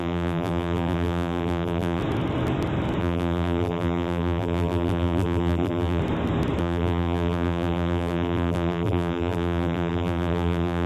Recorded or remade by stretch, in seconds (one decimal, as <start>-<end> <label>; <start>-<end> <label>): 0.0-2.0 remade; 2.0-3.0 recorded; 3.0-6.0 remade; 6.0-6.6 recorded; 6.6-10.9 remade